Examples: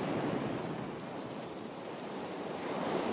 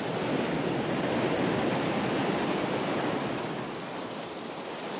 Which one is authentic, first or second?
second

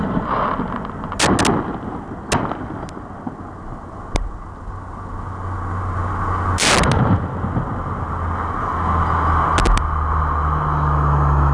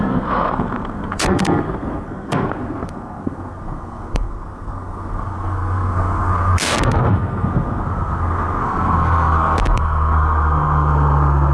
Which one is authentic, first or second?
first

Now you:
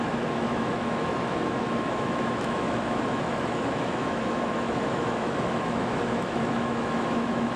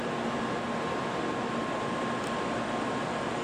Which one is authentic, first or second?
second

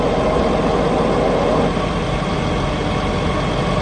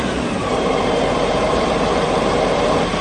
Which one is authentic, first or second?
first